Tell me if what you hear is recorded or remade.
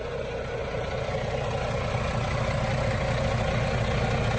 recorded